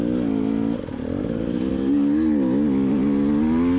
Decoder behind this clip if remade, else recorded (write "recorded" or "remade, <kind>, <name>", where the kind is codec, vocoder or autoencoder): recorded